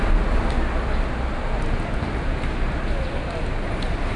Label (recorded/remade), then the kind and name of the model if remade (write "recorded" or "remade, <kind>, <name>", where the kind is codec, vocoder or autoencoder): recorded